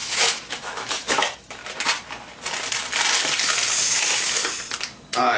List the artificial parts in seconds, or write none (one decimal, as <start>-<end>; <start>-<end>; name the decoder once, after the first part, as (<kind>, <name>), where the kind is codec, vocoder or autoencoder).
0.0-1.6 (autoencoder, DAC-VAE); 3.8-4.4

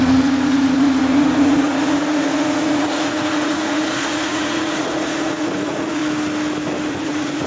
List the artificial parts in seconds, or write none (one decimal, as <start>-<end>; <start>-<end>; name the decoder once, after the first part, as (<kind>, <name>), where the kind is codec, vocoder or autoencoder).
0.0-6.0 (vocoder, Vocos); 6.9-7.5

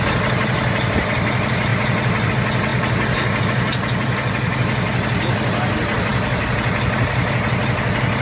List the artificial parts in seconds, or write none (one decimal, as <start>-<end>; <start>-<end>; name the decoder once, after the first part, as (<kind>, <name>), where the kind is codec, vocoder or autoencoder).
none

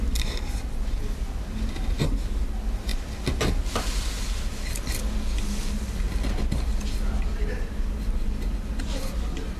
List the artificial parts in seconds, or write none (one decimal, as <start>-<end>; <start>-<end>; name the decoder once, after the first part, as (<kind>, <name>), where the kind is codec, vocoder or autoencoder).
none